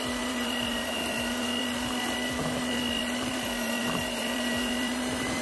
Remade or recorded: remade